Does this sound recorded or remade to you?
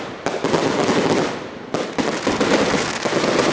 recorded